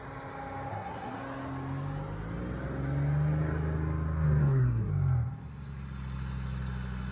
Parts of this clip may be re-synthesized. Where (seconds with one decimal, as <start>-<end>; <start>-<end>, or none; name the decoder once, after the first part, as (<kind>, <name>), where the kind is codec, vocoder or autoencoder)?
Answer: 0.7-1.2 (codec, SNAC); 4.4-4.9